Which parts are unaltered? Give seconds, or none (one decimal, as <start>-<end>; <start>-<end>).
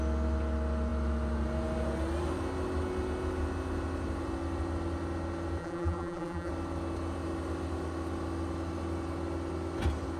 0.0-5.6; 6.5-10.2